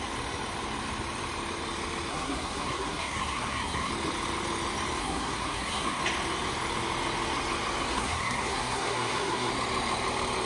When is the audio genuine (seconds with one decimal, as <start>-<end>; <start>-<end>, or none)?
0.0-2.1; 3.9-5.0; 6.0-7.9; 9.5-10.5